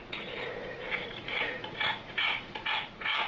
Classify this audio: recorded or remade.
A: remade